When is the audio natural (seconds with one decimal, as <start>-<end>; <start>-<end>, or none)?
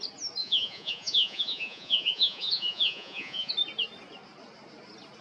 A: 0.0-0.4; 3.5-5.2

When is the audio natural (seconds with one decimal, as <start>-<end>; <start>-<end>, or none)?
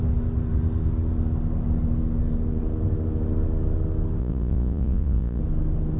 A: 0.0-4.2; 5.4-6.0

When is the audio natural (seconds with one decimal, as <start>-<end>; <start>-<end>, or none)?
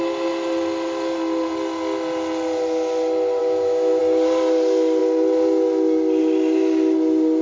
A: 0.0-3.4; 4.0-7.4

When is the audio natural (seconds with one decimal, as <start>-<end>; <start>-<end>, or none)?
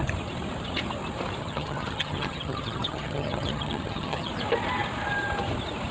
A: 0.0-1.4; 4.3-5.9